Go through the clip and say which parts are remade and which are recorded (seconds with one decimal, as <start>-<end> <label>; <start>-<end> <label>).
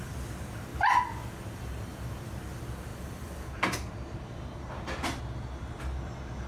0.0-2.9 recorded; 2.9-5.2 remade; 5.2-6.5 recorded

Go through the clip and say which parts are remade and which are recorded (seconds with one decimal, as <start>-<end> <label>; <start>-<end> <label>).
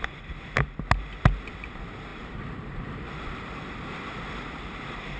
0.0-2.1 recorded; 2.1-5.2 remade